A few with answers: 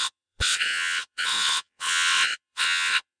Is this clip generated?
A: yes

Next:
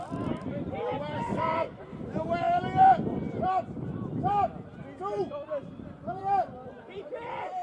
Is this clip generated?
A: yes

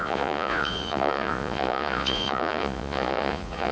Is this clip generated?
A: yes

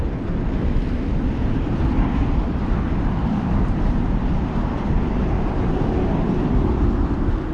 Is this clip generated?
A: no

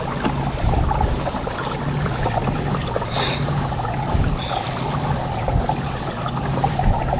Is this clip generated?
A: no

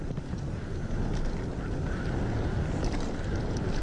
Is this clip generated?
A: no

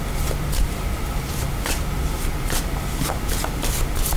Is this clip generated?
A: yes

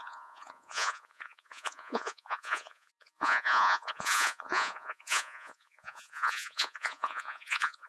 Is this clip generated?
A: yes